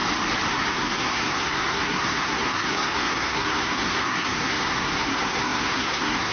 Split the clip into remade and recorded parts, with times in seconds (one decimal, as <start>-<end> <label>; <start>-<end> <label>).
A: 0.0-0.5 recorded; 0.5-6.3 remade